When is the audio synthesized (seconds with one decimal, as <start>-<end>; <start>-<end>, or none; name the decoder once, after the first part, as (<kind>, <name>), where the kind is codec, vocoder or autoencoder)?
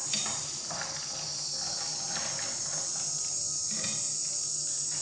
none